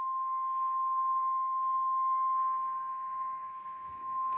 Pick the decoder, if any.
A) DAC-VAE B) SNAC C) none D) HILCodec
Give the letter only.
B